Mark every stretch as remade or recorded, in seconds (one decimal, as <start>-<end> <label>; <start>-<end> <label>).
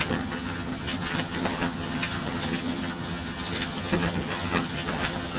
0.0-5.4 remade